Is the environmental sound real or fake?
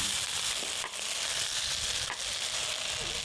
real